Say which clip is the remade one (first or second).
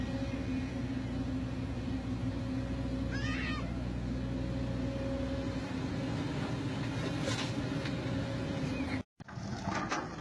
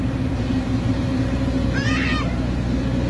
second